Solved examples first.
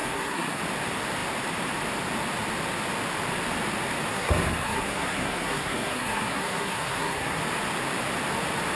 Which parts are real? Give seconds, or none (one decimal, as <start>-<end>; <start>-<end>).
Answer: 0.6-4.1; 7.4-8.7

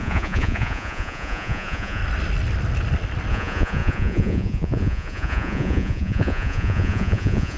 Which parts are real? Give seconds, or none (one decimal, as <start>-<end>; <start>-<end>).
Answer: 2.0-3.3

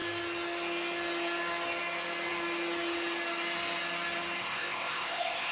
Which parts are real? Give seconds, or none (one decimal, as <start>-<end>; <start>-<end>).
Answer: 0.0-4.4

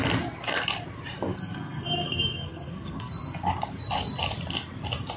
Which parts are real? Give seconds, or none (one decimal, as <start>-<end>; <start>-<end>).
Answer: 0.0-1.3; 3.5-5.2

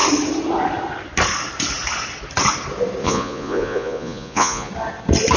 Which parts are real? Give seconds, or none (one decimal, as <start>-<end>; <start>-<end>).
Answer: 0.0-3.0; 4.7-5.4